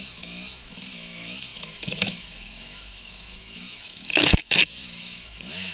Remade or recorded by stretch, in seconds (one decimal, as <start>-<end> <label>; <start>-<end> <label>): 0.0-5.7 remade